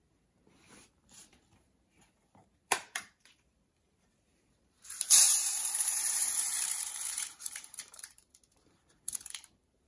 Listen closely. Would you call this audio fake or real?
fake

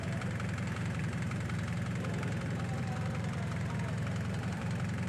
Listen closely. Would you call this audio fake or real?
fake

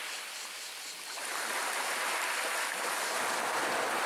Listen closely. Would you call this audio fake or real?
real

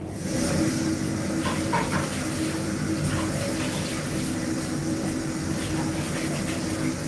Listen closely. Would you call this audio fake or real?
real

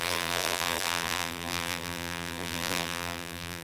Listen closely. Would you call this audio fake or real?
fake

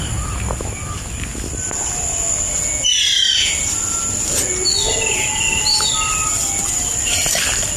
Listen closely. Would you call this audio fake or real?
real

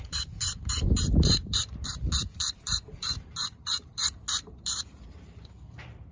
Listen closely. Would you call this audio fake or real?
fake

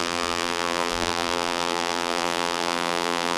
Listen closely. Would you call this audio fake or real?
fake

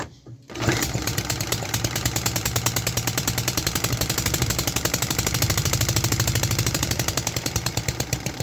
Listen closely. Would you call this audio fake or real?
fake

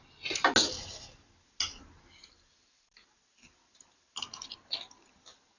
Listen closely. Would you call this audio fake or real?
real